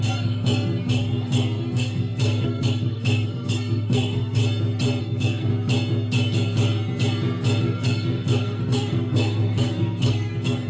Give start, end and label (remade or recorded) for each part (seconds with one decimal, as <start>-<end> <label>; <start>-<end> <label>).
0.0-4.4 remade; 4.4-5.0 recorded; 5.0-5.5 remade; 5.5-7.6 recorded; 7.6-10.7 remade